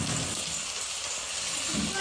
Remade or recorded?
recorded